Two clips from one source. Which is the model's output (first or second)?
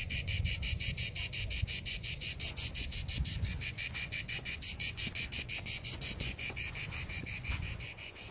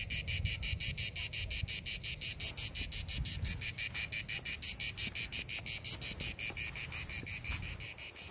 first